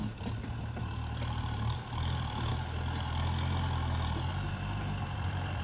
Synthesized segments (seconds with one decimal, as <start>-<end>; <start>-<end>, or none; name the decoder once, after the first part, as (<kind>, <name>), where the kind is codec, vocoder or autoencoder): 0.0-2.5 (vocoder, BigVGAN v2); 4.3-5.6